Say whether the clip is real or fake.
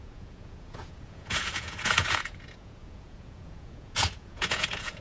fake